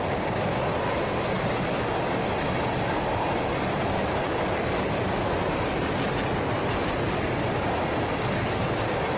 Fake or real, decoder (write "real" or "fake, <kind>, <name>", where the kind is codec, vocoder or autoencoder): real